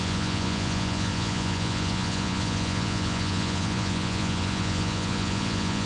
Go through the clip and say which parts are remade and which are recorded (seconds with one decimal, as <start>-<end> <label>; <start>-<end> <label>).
0.0-5.9 remade